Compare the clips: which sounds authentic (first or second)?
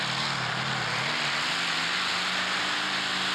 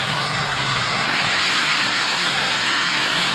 first